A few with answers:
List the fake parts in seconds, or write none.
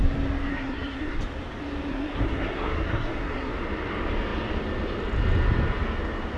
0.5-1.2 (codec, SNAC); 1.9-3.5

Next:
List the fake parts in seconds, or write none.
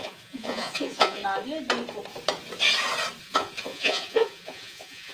0.0-1.2 (vocoder, Vocos); 3.2-5.1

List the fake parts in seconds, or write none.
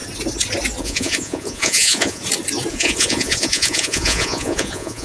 0.8-2.2 (vocoder, Vocos); 2.7-5.0